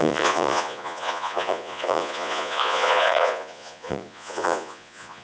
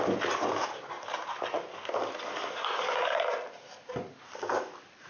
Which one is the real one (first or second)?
second